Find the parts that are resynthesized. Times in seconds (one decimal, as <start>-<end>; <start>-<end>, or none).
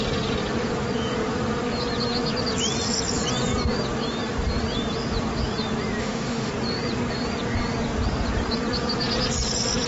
6.0-6.5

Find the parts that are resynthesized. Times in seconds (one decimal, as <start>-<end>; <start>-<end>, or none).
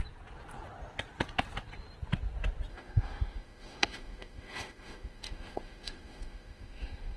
2.7-7.2